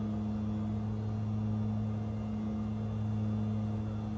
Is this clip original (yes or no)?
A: yes